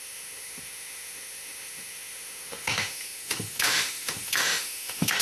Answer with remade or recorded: remade